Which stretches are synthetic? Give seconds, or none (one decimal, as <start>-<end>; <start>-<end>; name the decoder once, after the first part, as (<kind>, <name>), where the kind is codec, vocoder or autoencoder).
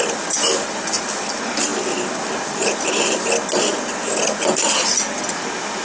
none